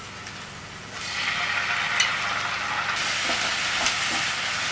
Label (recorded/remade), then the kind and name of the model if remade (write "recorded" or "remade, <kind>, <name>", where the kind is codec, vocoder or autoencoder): recorded